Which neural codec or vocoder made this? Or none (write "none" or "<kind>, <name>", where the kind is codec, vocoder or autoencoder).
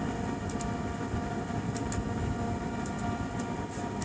none